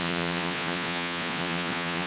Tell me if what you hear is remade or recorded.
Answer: remade